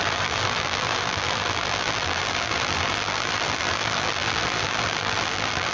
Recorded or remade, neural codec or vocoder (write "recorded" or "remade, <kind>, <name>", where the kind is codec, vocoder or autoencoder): remade, vocoder, BigVGAN v2